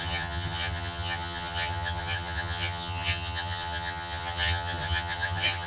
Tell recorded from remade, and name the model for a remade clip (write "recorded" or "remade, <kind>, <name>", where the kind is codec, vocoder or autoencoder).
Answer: remade, vocoder, HiFi-GAN